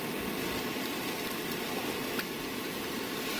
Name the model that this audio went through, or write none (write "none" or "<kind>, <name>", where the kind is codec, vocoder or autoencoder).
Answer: none